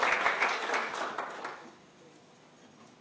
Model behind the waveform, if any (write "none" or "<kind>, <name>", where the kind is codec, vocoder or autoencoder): none